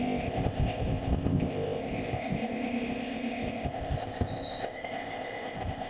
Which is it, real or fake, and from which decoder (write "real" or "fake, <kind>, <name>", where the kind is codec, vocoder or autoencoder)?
fake, codec, ZipCodec